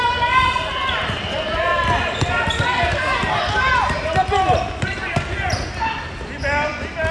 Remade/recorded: recorded